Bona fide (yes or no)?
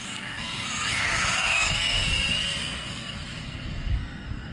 no